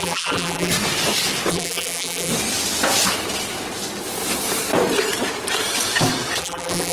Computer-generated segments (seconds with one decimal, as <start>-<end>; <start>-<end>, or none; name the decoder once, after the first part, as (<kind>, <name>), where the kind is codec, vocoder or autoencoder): 0.0-0.7 (vocoder, BigVGAN v2); 1.5-2.3; 6.4-6.9